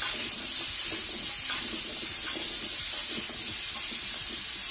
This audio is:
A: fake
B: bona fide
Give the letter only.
B